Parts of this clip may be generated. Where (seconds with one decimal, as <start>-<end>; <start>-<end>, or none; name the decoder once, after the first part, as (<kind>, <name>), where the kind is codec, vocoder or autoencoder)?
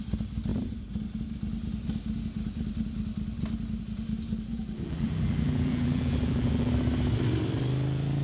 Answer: 4.5-6.7 (vocoder, BigVGAN v2)